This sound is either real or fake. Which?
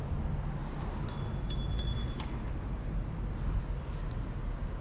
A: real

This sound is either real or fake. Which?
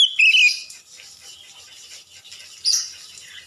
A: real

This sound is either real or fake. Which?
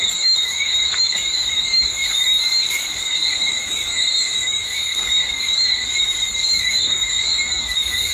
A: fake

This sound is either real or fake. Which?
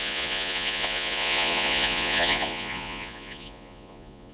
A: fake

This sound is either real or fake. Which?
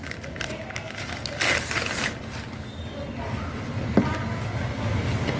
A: real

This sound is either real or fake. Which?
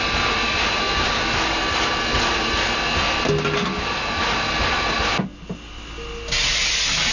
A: real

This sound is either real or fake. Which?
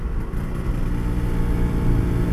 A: real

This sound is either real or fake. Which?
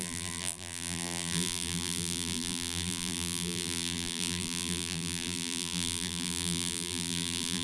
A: fake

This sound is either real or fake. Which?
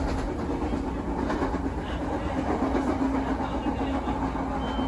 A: real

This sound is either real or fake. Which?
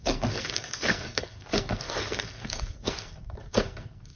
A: fake